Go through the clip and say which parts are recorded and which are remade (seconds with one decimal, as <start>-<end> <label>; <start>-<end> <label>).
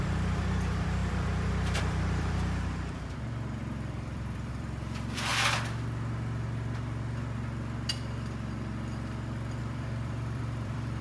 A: 0.0-5.3 remade; 5.3-9.6 recorded; 9.6-11.0 remade